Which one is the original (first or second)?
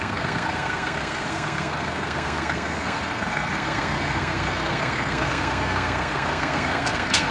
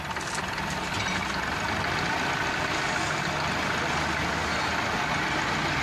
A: second